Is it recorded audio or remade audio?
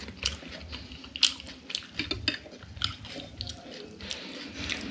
recorded